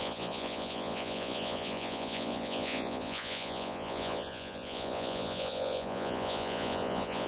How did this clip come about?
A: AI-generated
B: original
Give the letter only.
A